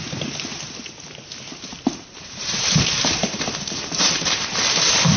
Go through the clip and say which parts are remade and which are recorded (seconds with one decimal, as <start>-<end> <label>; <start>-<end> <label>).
0.0-1.7 recorded; 1.7-4.6 remade; 4.6-5.2 recorded

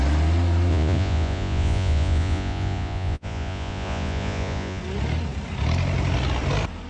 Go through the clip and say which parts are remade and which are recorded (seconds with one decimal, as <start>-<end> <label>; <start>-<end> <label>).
0.0-0.7 recorded; 0.7-4.8 remade; 4.8-6.9 recorded

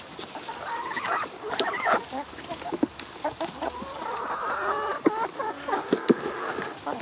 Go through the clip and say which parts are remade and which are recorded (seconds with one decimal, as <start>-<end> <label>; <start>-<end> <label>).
0.0-3.9 remade; 3.9-4.9 recorded; 4.9-7.0 remade

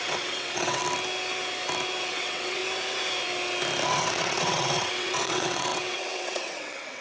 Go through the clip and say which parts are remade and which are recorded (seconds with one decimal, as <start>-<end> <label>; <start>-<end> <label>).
0.0-0.8 remade; 0.8-2.0 recorded; 2.0-2.6 remade; 2.6-3.9 recorded; 3.9-7.0 remade

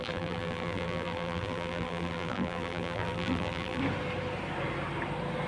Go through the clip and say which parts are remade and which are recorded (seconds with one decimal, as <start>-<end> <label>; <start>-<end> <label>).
0.0-3.8 remade; 3.8-5.5 recorded